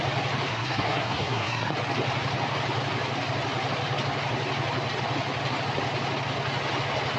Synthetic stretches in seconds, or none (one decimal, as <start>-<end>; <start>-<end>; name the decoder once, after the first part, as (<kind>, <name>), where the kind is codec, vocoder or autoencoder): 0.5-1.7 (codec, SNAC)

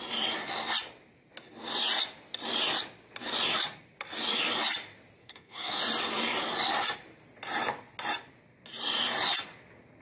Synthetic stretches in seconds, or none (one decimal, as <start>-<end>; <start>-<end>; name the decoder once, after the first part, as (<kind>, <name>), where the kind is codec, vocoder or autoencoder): 5.2-5.8 (codec, SNAC)

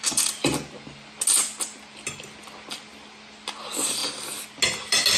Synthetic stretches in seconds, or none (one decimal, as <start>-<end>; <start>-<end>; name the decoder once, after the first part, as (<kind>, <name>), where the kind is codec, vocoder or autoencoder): 0.0-0.5 (vocoder, BigVGAN v2); 3.6-4.0

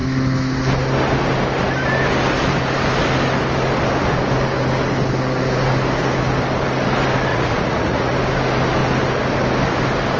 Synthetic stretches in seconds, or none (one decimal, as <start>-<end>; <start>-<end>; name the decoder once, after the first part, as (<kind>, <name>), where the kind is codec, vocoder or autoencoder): 7.3-8.1 (vocoder, Vocos)

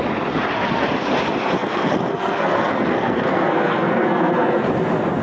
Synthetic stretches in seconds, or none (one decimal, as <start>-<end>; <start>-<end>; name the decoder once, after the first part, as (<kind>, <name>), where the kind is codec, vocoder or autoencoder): 1.6-4.7 (codec, SNAC)

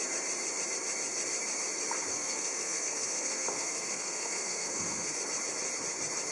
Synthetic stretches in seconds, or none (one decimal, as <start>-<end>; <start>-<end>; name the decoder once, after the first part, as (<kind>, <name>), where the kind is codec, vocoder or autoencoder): 2.1-5.2 (codec, SNAC)

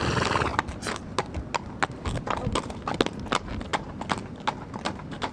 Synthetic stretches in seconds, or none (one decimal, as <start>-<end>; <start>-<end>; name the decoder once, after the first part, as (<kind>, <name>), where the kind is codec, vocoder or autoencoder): none